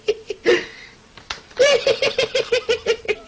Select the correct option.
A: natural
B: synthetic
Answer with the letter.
B